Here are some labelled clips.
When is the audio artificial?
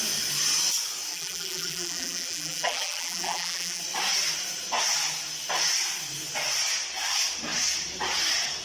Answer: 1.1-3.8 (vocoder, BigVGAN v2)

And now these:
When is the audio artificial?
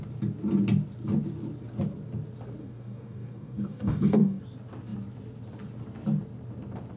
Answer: 2.6-4.4 (codec, DAC)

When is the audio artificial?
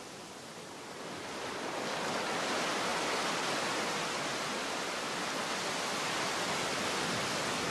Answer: none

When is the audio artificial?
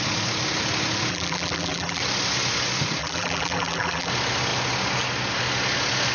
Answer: 1.1-2.0 (vocoder, BigVGAN v2); 3.0-4.1